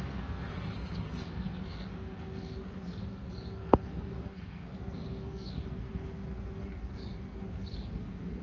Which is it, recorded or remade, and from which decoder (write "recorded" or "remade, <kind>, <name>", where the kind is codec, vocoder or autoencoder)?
remade, codec, SNAC